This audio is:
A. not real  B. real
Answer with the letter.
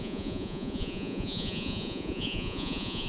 A